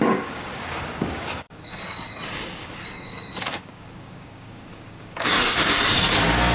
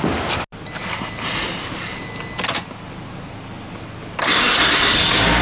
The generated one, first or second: first